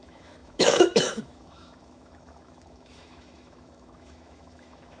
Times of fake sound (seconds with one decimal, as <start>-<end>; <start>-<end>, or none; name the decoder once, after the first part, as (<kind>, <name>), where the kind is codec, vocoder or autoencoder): 0.0-5.0 (autoencoder, DAC-VAE)